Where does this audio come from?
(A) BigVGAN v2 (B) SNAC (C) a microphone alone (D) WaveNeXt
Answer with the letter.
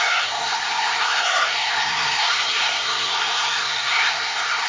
B